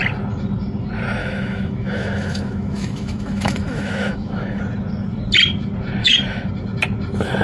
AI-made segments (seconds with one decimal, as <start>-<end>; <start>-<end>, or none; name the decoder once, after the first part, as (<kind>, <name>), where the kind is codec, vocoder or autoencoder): 1.2-4.6 (autoencoder, DAC-VAE); 6.0-6.5